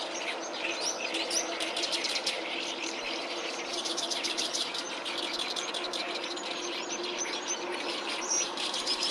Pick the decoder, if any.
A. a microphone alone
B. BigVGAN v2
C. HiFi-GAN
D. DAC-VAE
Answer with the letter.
B